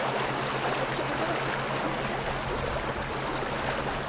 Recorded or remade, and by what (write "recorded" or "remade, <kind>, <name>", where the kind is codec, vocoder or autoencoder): recorded